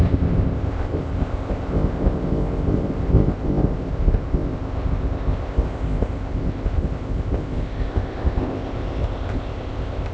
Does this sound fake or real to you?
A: fake